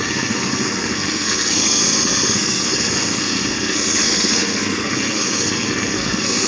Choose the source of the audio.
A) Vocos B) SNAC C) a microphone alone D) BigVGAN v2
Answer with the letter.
B